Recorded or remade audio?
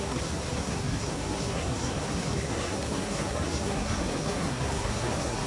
remade